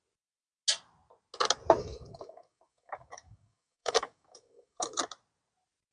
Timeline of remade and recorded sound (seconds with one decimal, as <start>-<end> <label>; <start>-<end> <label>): 0.0-1.8 recorded; 1.8-5.0 remade; 5.0-5.9 recorded

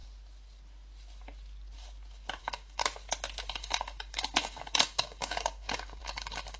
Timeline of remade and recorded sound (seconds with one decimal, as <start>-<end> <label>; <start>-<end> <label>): 0.0-2.4 recorded; 2.4-2.8 remade; 2.8-3.5 recorded; 3.5-6.6 remade

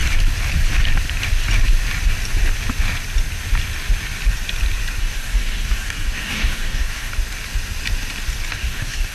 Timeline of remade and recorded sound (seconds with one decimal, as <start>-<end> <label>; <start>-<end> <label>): 0.0-5.0 recorded; 5.0-7.1 remade; 7.1-8.5 recorded; 8.5-9.1 remade

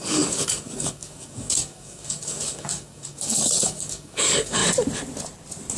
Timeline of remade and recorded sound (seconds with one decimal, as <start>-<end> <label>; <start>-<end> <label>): 0.0-4.6 remade; 4.6-5.8 recorded

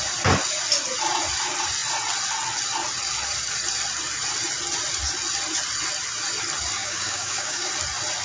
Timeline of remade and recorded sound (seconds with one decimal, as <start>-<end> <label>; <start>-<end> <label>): 0.0-6.8 recorded; 6.8-7.7 remade; 7.7-8.2 recorded

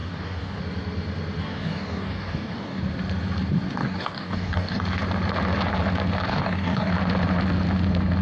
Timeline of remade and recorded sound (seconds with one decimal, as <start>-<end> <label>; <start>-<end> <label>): 0.0-0.6 remade; 0.6-1.4 recorded; 1.4-2.8 remade; 2.8-3.8 recorded; 3.8-4.8 remade; 4.8-6.3 recorded; 6.3-6.9 remade; 6.9-8.2 recorded

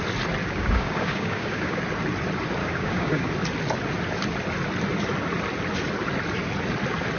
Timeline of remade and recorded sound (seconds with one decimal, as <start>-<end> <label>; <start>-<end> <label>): 0.0-0.4 recorded; 0.4-1.8 remade; 1.8-2.6 recorded; 2.6-3.3 remade; 3.3-7.2 recorded